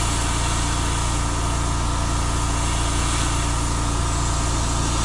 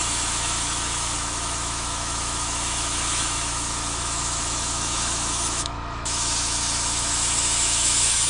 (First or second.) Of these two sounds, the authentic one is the first